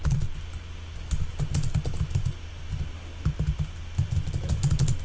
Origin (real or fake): real